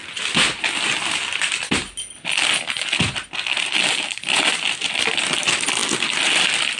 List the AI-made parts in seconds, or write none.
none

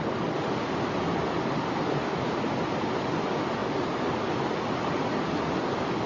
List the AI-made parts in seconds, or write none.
none

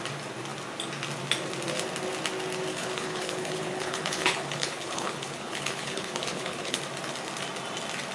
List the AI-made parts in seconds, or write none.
2.7-6.8 (codec, HILCodec)

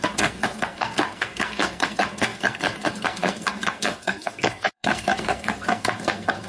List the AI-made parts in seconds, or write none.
0.0-6.5 (codec, SNAC)

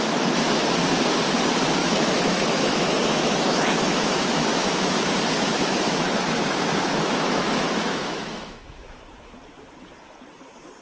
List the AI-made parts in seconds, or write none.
1.8-5.0 (autoencoder, DAC-VAE); 5.5-9.0

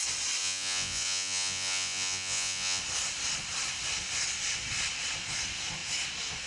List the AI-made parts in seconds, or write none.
0.4-2.8 (vocoder, Vocos)

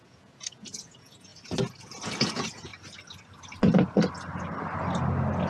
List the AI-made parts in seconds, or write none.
0.0-1.3 (vocoder, Vocos); 2.3-2.7

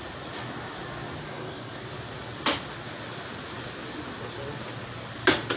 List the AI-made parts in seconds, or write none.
1.2-1.7 (codec, DAC)